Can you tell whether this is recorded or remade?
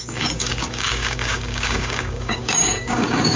remade